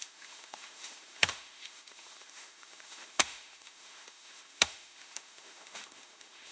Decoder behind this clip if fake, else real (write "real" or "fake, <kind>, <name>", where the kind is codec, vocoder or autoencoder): fake, autoencoder, DAC-VAE